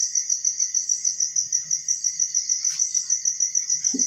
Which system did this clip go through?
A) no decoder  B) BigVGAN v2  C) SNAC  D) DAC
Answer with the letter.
A